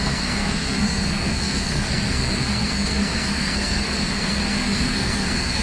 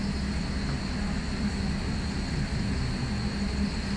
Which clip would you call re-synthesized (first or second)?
first